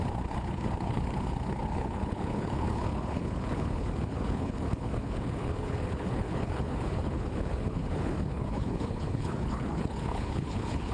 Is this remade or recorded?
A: remade